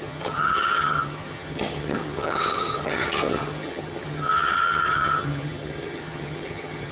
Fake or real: fake